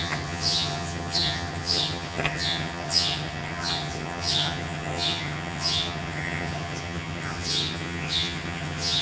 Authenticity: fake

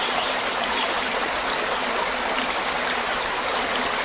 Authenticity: real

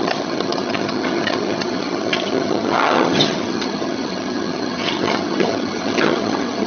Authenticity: fake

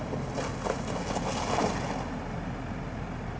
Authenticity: real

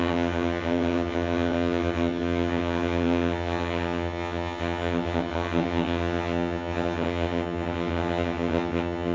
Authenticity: fake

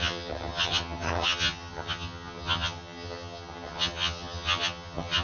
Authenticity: fake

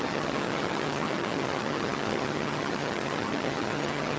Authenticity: fake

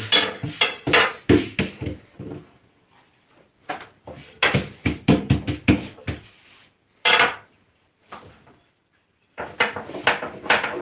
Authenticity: real